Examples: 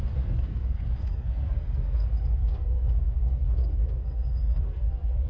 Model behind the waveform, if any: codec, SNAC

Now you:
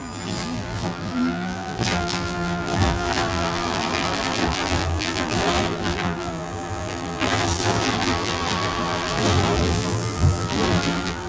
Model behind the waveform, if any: vocoder, BigVGAN v2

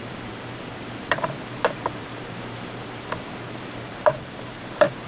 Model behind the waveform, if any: vocoder, BigVGAN v2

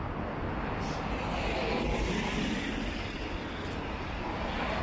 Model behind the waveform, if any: none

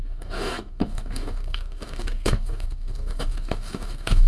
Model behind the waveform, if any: codec, DAC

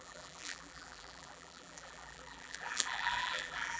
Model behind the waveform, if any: vocoder, BigVGAN v2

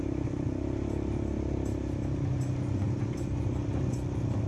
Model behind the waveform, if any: none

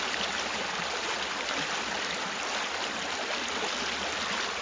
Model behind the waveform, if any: none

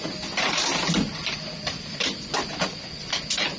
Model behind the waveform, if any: none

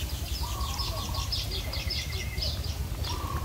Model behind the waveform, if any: none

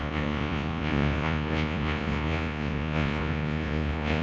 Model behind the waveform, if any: vocoder, Vocos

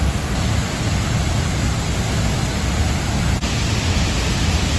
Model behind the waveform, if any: none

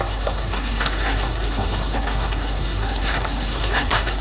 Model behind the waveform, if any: codec, SNAC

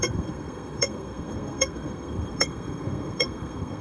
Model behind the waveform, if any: codec, SNAC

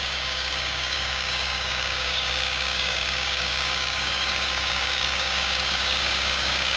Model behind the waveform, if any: codec, DAC